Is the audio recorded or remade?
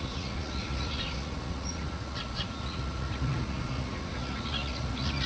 remade